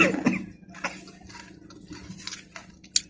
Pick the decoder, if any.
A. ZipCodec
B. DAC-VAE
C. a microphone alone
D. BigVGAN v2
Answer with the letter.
C